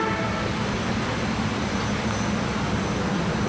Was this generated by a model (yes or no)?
no